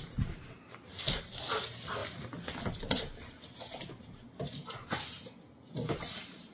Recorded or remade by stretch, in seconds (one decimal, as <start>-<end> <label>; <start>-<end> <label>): 0.0-6.5 recorded